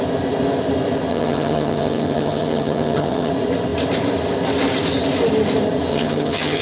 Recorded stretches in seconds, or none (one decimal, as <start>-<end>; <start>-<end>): 0.0-1.1; 3.3-5.9